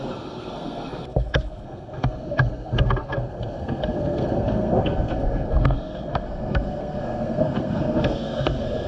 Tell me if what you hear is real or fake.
fake